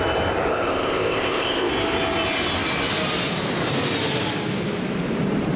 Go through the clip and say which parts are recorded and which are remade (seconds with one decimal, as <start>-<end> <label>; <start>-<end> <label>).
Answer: 0.0-0.5 recorded; 0.5-1.7 remade; 1.7-5.6 recorded